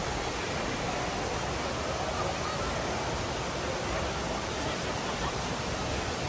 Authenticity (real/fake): real